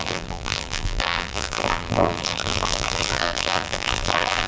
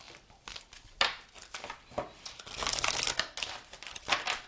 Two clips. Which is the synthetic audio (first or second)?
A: first